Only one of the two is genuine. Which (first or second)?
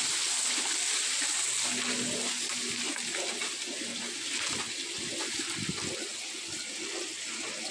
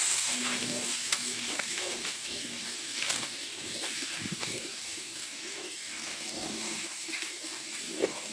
first